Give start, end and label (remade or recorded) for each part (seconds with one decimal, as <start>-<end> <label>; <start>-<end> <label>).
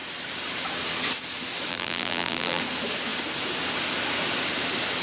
0.0-1.7 recorded; 1.7-2.6 remade; 2.6-5.0 recorded